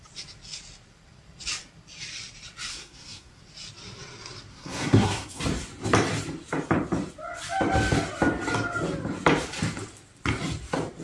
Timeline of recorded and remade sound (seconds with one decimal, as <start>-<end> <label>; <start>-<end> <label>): 0.0-2.7 recorded; 2.7-3.4 remade; 3.4-4.5 recorded; 4.5-5.4 remade; 5.4-11.0 recorded